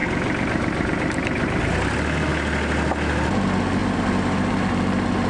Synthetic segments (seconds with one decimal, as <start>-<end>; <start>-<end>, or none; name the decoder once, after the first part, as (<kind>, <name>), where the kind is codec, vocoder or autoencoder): 0.0-1.6 (vocoder, BigVGAN v2); 3.8-4.7